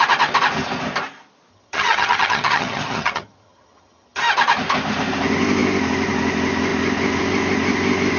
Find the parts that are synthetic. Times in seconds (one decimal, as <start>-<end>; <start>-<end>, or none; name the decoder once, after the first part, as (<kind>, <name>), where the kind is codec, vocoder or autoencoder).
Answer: 1.5-4.2 (vocoder, HiFi-GAN)